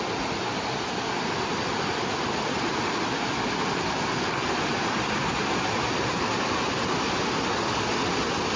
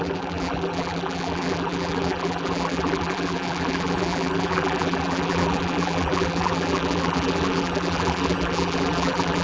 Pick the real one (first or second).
first